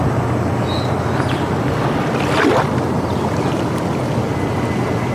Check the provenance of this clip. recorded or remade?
recorded